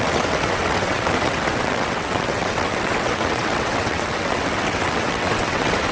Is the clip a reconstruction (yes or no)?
yes